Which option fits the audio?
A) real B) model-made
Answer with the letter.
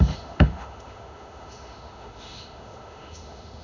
B